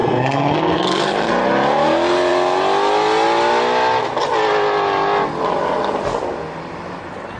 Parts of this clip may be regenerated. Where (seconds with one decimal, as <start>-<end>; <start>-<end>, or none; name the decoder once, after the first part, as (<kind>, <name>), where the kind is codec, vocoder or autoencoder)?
0.0-1.3 (codec, SNAC)